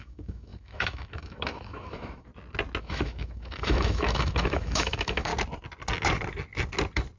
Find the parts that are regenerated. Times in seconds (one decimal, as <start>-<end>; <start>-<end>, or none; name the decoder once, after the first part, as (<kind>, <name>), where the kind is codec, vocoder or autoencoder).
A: 0.0-2.3 (autoencoder, DAC-VAE); 2.8-5.3